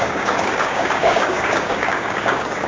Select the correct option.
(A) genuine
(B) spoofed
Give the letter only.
B